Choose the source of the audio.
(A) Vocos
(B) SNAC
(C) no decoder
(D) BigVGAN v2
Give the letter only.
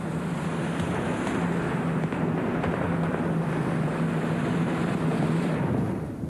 C